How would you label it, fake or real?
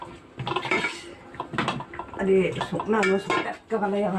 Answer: real